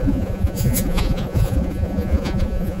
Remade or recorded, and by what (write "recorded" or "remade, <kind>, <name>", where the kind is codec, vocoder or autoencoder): remade, vocoder, Vocos